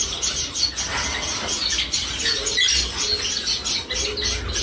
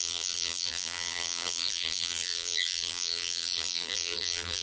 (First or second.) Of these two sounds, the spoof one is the second